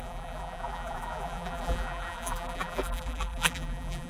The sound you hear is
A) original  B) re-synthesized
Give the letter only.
B